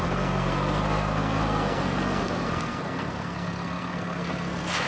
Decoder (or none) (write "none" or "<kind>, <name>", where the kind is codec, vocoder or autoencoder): codec, SNAC